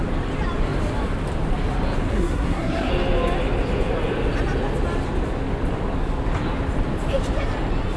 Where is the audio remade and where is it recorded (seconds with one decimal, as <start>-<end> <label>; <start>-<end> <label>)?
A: 0.0-2.1 recorded; 2.1-2.9 remade; 2.9-8.0 recorded